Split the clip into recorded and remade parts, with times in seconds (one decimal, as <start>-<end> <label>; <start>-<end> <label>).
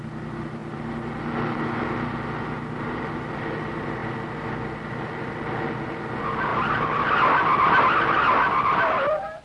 0.0-9.4 recorded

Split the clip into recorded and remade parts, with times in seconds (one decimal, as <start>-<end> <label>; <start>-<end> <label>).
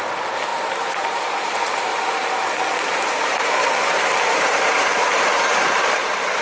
0.0-1.9 remade; 1.9-2.8 recorded; 2.8-6.4 remade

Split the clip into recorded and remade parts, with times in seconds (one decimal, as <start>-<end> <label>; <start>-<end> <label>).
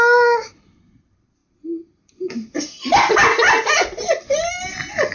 0.0-5.1 recorded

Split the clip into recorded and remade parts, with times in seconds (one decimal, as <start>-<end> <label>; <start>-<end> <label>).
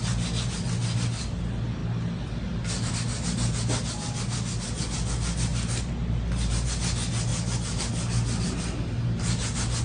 0.0-9.8 recorded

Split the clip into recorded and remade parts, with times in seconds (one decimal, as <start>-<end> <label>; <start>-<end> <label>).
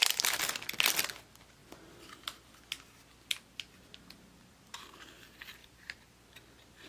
0.0-5.6 recorded; 5.6-6.1 remade; 6.1-6.9 recorded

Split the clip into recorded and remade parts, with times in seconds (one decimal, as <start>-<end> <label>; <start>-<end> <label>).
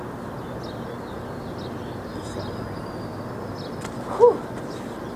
0.0-5.2 recorded